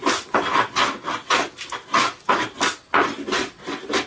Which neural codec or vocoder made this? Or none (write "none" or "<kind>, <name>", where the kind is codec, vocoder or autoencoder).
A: none